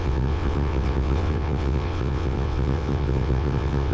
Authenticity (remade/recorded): remade